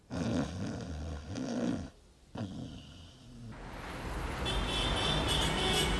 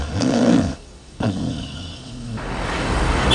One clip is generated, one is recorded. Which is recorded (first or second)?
first